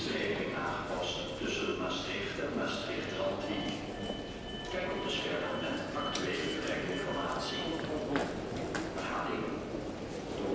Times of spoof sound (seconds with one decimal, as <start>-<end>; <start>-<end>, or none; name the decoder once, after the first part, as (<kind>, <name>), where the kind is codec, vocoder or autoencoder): 1.7-2.4 (vocoder, BigVGAN v2)